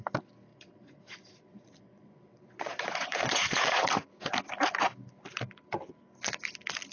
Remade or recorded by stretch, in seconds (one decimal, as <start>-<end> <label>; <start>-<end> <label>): 0.0-0.5 recorded; 0.5-3.8 remade; 3.8-6.9 recorded